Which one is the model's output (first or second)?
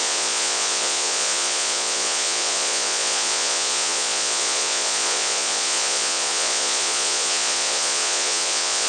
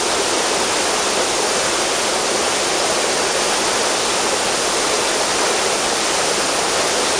first